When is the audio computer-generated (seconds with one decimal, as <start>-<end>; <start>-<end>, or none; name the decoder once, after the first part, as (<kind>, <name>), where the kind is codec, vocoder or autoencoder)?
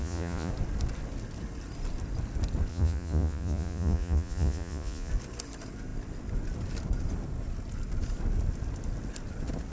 0.0-0.5 (vocoder, Vocos); 2.7-5.1